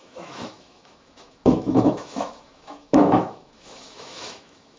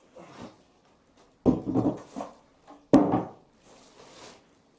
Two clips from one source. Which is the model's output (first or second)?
first